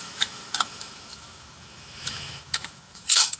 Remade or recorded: remade